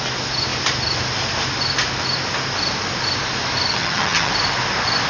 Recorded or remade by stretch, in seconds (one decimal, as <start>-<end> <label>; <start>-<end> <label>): 0.0-3.7 recorded; 3.7-4.3 remade; 4.3-5.1 recorded